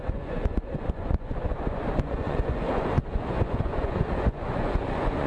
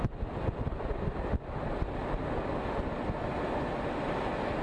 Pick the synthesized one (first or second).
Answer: first